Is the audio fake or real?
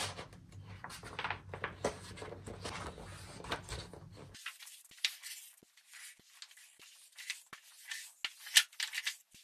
real